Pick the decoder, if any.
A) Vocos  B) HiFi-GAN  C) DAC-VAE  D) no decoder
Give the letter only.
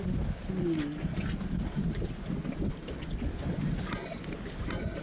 D